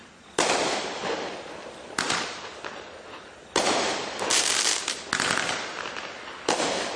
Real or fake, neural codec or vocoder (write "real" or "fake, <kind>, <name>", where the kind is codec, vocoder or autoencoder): real